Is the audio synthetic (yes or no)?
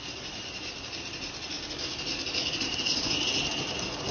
no